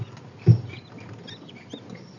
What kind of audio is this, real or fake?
real